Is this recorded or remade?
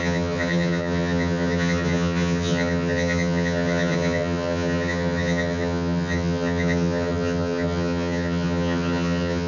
remade